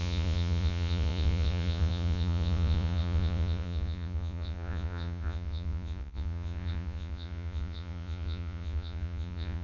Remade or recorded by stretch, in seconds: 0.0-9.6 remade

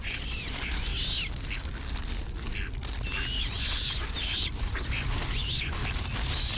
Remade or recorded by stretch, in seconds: 0.0-0.9 remade; 0.9-3.4 recorded; 3.4-5.8 remade; 5.8-6.6 recorded

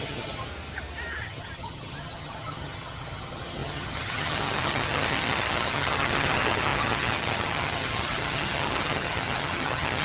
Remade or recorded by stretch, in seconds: 0.0-0.5 remade; 0.5-1.2 recorded; 1.2-10.0 remade

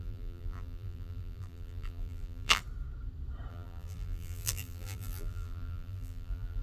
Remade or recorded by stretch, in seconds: 0.0-2.6 remade; 2.6-3.5 recorded; 3.5-6.6 remade

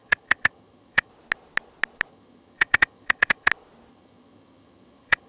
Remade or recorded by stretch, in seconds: 0.0-1.1 remade; 1.1-2.1 recorded; 2.1-3.5 remade; 3.5-3.9 recorded; 3.9-5.3 remade

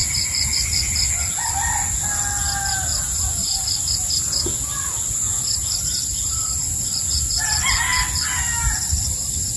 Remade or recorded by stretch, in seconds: 0.0-0.5 remade; 0.5-3.4 recorded; 3.4-4.5 remade; 4.5-5.6 recorded; 5.6-7.5 remade; 7.5-9.6 recorded